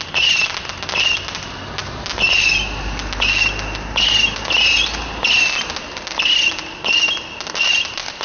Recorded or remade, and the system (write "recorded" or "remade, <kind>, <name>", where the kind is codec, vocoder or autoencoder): recorded